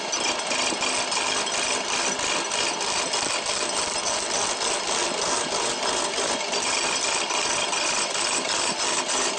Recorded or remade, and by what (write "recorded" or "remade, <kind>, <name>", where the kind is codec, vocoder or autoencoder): recorded